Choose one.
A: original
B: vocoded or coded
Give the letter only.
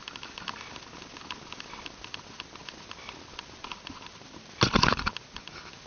A